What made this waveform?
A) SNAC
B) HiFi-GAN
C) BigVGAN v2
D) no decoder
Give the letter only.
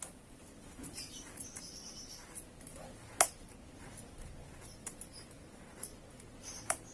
D